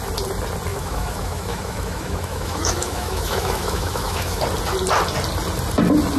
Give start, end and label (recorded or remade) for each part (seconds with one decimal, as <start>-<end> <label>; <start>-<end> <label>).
0.0-0.7 recorded; 0.7-4.4 remade; 4.4-6.2 recorded